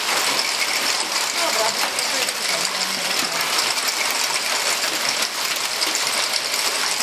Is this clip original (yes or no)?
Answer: yes